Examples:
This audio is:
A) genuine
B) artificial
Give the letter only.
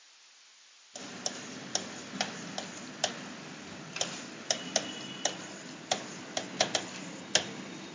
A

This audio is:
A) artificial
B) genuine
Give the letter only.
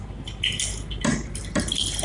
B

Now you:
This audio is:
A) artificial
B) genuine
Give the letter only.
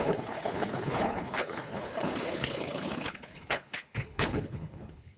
A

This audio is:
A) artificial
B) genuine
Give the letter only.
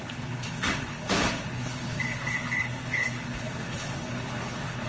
A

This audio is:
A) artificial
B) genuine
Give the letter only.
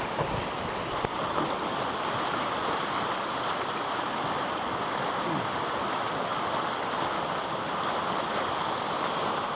B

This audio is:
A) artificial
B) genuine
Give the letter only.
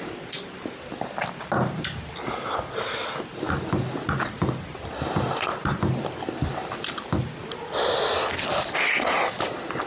B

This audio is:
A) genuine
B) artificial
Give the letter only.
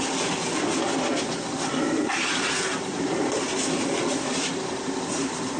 A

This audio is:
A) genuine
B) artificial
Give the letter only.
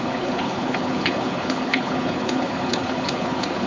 B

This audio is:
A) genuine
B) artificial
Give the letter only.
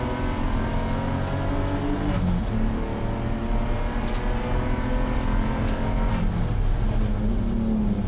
A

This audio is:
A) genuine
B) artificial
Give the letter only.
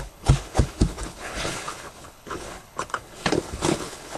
B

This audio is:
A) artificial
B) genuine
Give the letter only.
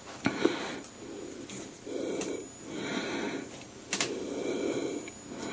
B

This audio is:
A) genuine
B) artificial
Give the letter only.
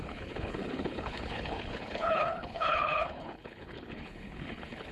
B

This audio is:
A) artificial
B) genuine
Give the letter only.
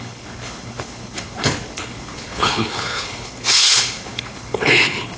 A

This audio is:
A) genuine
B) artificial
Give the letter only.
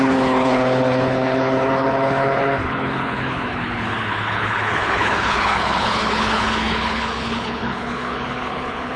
B